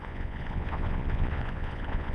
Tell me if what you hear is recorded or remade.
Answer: remade